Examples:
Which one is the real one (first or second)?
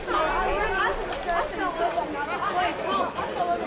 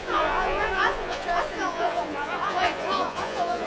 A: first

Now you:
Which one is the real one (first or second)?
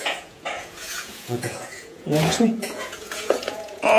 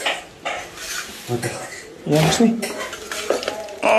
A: second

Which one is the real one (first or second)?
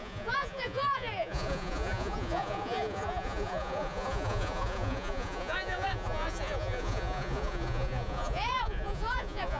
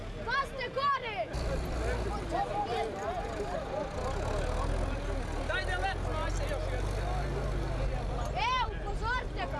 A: second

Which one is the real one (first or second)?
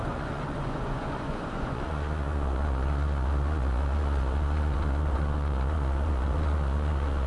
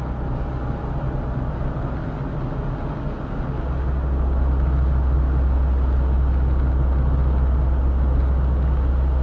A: second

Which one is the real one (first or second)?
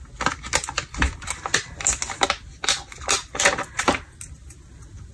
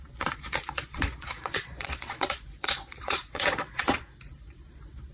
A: first